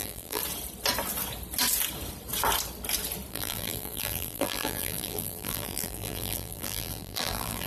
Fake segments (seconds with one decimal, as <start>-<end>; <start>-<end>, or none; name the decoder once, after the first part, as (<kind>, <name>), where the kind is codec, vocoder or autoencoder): 0.0-0.4 (vocoder, BigVGAN v2); 3.3-7.7